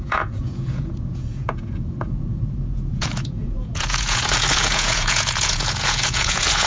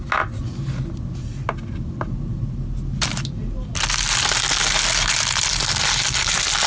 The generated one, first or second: first